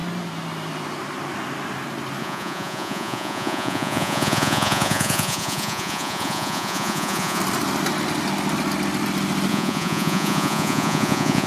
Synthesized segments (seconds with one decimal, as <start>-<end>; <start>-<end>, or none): 2.2-7.4; 9.5-11.5